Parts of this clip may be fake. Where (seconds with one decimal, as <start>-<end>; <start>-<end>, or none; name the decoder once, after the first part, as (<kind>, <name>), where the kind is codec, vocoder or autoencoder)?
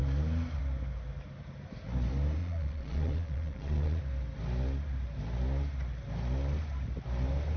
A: 2.4-4.0 (vocoder, Vocos)